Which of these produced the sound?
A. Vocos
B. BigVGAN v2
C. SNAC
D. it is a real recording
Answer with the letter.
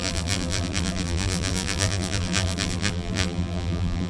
B